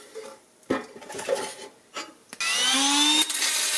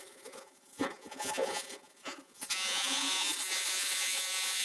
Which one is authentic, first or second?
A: first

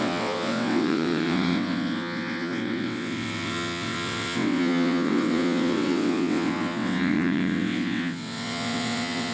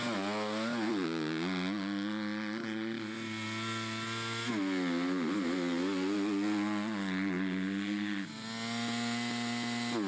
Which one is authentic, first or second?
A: second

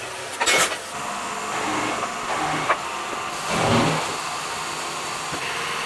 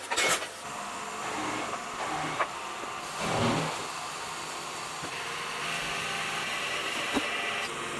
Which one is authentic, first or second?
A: first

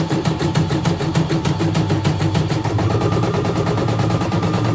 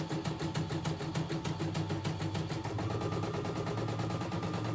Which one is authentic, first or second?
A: second